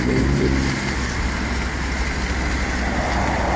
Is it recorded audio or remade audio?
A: recorded